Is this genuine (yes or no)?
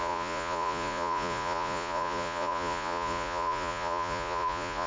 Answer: no